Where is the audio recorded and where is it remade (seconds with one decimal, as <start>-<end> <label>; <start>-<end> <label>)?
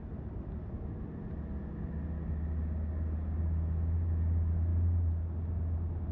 0.0-6.1 recorded